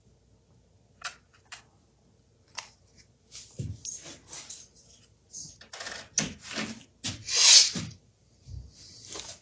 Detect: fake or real real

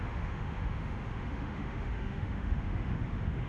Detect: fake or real fake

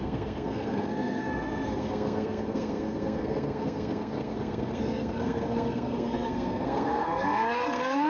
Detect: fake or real fake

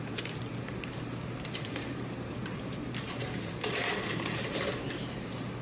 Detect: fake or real fake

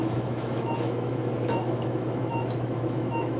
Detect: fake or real fake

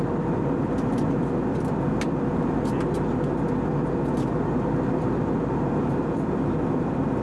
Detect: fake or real real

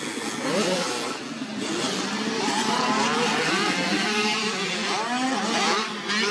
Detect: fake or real real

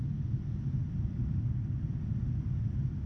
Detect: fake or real real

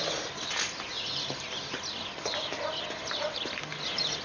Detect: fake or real real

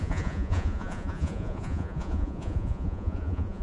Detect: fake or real fake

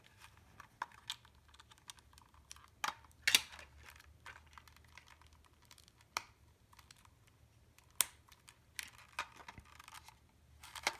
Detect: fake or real real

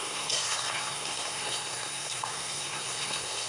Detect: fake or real fake